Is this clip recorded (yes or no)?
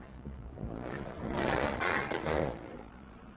no